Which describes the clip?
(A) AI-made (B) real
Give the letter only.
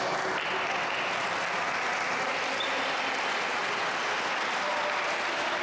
B